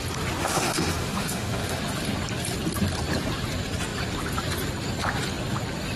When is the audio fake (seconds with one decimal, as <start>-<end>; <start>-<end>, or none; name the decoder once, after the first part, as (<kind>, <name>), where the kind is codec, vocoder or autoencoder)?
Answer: 0.4-1.8 (autoencoder, DAC-VAE)